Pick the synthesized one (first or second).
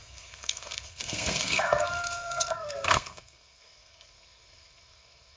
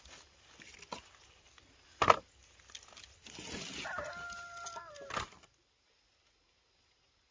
first